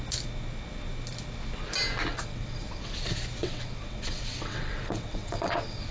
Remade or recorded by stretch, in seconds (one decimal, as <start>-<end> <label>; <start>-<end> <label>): 0.0-2.1 recorded; 2.1-2.9 remade; 2.9-3.4 recorded; 3.4-5.9 remade